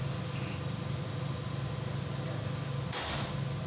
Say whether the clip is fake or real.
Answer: real